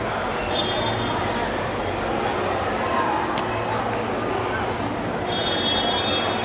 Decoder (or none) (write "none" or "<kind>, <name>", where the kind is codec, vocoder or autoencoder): none